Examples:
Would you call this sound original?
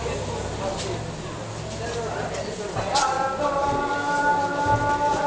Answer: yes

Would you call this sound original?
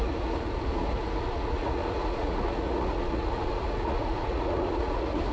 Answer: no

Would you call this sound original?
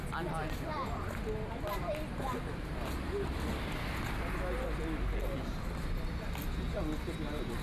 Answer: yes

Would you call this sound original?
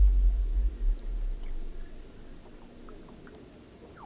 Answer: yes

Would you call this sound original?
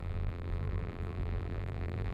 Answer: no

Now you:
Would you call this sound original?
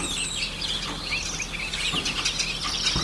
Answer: yes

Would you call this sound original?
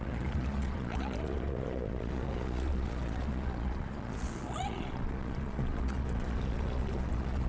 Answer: no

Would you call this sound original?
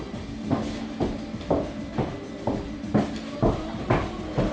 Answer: yes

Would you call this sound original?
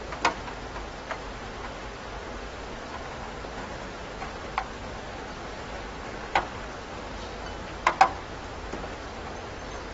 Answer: yes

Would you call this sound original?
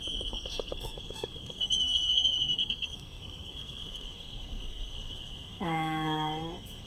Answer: no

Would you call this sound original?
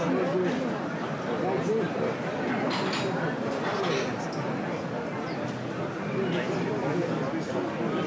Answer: yes